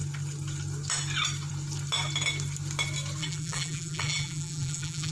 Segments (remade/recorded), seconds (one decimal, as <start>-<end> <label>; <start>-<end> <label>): 0.0-3.2 recorded; 3.2-5.1 remade